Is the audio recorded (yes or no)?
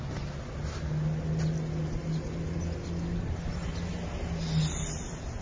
yes